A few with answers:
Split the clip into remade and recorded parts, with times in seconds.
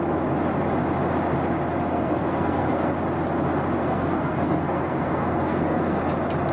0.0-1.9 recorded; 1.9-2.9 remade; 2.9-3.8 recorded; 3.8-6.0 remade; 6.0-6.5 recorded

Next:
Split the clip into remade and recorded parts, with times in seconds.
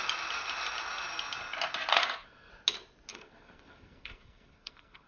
0.0-1.9 recorded; 1.9-2.5 remade; 2.5-3.1 recorded; 3.1-5.1 remade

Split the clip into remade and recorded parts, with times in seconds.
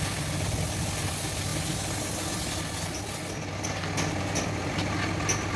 0.0-5.6 recorded